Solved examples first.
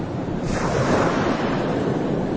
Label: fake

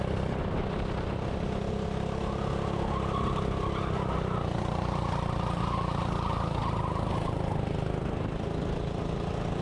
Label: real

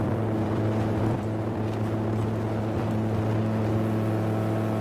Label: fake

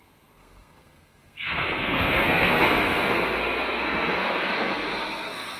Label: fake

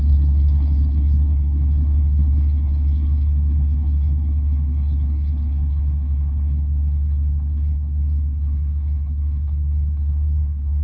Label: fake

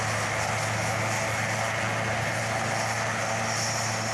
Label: real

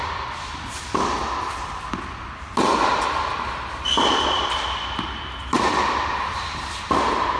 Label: real